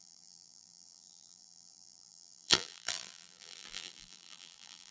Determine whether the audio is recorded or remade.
remade